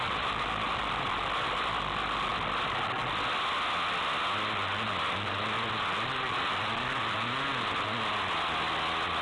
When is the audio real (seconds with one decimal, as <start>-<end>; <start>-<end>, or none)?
0.0-9.2